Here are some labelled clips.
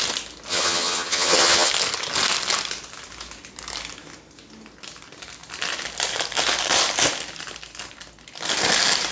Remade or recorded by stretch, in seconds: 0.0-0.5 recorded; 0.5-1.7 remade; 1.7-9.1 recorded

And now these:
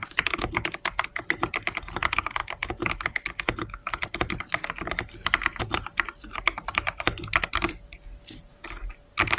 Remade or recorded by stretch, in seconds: 0.0-9.4 recorded

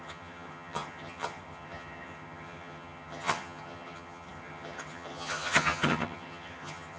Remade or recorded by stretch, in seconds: 0.0-7.0 remade

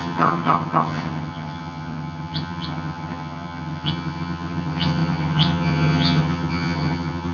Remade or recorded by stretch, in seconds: 0.0-7.3 remade

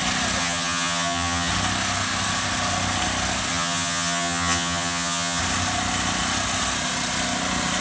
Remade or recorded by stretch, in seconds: 0.0-0.4 recorded; 0.4-1.5 remade; 1.5-3.5 recorded; 3.5-5.4 remade; 5.4-7.8 recorded

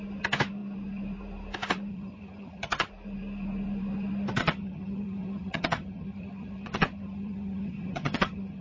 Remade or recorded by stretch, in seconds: 0.0-1.9 recorded; 1.9-2.9 remade; 2.9-4.4 recorded; 4.4-8.6 remade

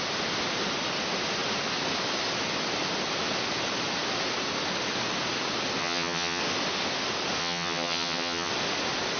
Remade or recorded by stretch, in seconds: 0.0-5.8 recorded; 5.8-6.4 remade; 6.4-7.4 recorded; 7.4-8.5 remade; 8.5-9.2 recorded